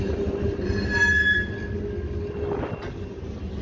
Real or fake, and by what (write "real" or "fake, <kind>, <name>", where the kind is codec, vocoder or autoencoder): real